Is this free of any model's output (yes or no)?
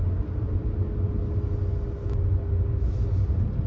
yes